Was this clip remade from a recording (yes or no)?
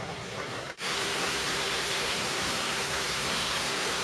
yes